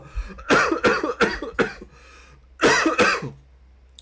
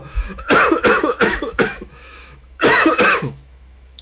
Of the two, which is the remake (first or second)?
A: second